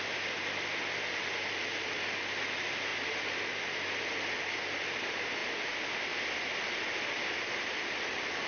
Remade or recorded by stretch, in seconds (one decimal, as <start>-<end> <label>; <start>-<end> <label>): 0.0-2.9 recorded; 2.9-3.5 remade; 3.5-8.5 recorded